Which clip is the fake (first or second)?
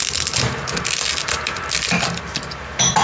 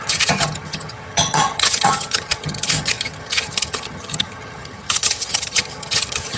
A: second